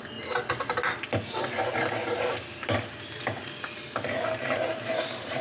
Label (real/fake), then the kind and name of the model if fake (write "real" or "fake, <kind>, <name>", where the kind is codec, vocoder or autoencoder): real